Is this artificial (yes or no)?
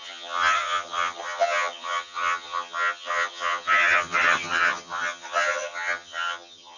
yes